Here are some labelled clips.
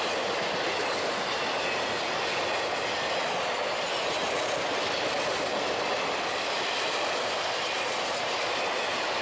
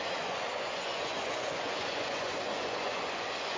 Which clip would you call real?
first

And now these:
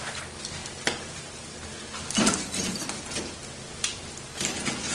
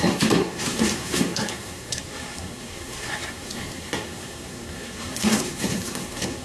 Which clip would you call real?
first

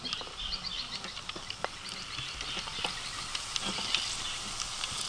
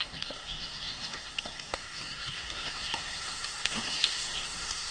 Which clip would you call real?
first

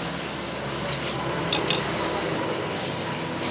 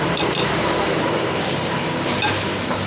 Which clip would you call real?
first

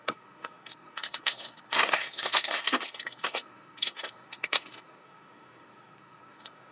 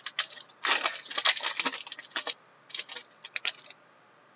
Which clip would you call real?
second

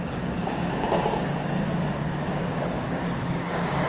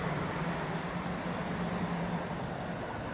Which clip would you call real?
second